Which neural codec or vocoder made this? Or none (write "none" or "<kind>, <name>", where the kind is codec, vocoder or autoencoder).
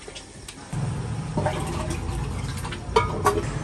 none